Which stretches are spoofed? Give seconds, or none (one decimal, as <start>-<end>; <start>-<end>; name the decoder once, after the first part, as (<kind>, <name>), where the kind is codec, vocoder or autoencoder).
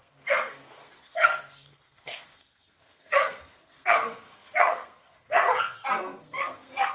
0.0-6.9 (codec, SNAC)